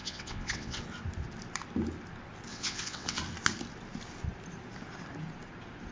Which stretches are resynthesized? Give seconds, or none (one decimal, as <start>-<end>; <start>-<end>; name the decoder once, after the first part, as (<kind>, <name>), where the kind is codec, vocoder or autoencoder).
0.0-0.8 (vocoder, WaveNeXt); 2.5-3.2